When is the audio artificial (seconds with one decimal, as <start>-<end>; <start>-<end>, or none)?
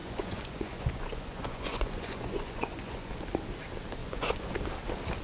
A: 0.0-3.1; 4.0-4.5